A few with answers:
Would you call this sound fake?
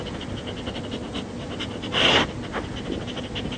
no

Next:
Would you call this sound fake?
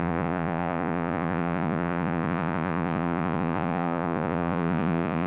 yes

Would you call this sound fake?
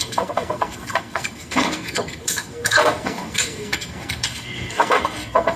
yes